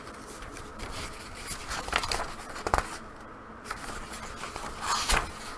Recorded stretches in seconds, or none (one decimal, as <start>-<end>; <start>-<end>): 0.0-5.6